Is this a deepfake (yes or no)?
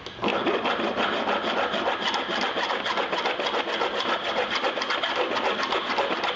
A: no